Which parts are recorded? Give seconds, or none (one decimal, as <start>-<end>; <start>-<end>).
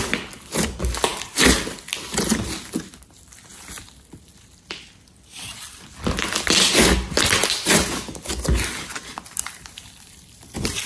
0.0-10.9